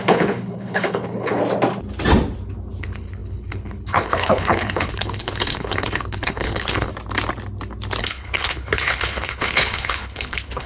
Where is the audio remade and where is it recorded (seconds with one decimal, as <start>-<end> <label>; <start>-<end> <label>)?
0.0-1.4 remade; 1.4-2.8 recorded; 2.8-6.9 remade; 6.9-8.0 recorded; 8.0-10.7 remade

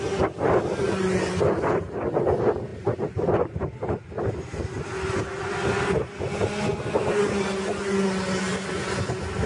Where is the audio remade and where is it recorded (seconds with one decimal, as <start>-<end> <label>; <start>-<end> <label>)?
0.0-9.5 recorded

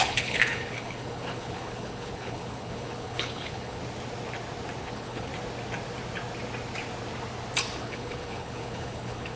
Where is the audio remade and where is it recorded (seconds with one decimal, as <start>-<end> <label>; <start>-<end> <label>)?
0.0-3.8 remade; 3.8-4.8 recorded; 4.8-5.3 remade; 5.3-7.8 recorded; 7.8-9.4 remade

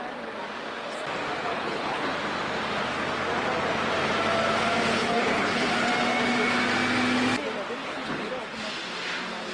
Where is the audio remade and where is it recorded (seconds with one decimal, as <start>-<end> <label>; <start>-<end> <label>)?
0.0-1.5 recorded; 1.5-2.1 remade; 2.1-5.0 recorded; 5.0-5.7 remade; 5.7-7.8 recorded; 7.8-8.3 remade; 8.3-9.5 recorded

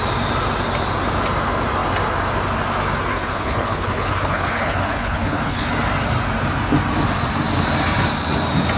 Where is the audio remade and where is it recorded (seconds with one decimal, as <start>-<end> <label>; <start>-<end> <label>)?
0.0-3.1 recorded; 3.1-5.7 remade; 5.7-8.8 recorded

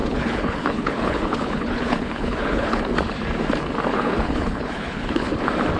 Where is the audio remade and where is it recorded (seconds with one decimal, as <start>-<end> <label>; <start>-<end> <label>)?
0.0-2.8 remade; 2.8-3.9 recorded; 3.9-5.3 remade; 5.3-5.8 recorded

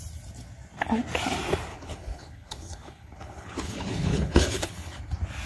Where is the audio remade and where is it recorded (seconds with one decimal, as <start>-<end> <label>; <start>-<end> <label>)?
0.0-1.7 recorded; 1.7-5.0 remade; 5.0-5.5 recorded